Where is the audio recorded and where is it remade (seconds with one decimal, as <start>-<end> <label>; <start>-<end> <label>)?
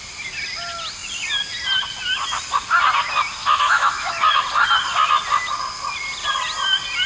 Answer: 0.0-3.4 recorded; 3.4-4.4 remade; 4.4-7.1 recorded